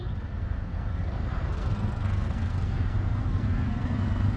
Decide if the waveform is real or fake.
fake